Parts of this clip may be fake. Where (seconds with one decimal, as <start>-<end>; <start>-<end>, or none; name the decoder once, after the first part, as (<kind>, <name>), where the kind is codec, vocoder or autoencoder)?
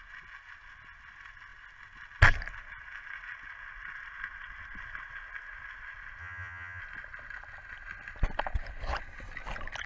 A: 6.2-6.8 (vocoder, HiFi-GAN)